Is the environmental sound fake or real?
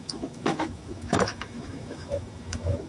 fake